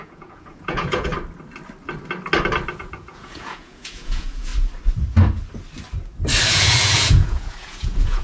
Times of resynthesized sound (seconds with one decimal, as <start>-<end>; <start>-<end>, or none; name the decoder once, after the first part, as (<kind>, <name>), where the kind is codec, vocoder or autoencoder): 0.0-1.1 (vocoder, Vocos); 2.8-4.5; 6.5-8.2